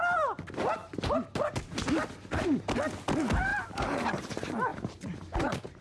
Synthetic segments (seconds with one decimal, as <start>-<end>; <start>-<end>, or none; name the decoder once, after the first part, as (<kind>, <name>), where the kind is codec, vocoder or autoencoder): 3.5-4.3 (vocoder, BigVGAN v2); 4.7-5.8